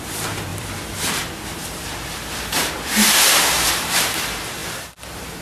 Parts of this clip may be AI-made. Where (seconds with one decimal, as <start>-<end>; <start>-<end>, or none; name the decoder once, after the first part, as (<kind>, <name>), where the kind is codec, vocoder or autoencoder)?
0.0-5.4 (vocoder, BigVGAN v2)